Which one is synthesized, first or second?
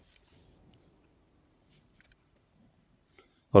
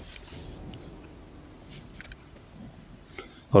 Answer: first